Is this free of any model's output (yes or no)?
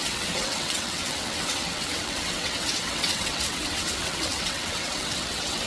no